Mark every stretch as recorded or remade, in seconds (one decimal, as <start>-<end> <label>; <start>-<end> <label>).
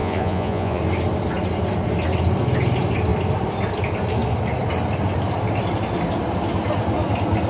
0.0-0.8 remade; 0.8-7.5 recorded